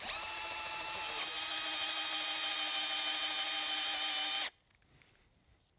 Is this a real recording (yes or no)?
yes